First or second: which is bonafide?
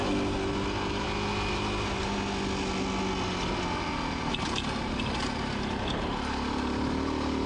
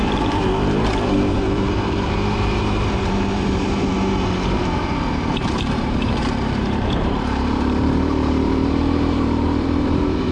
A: first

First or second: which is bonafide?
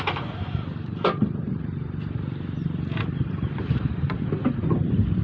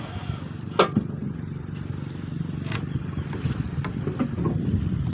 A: second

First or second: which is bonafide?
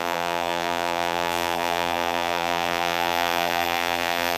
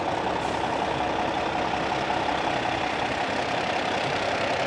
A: second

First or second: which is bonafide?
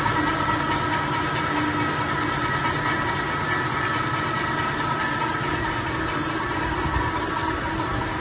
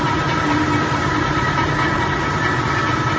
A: first